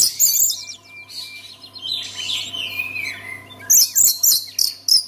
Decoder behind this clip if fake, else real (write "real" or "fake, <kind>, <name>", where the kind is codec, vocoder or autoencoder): real